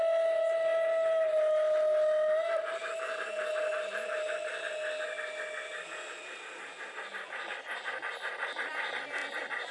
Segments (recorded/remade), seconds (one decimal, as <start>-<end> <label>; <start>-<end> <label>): 0.0-9.7 recorded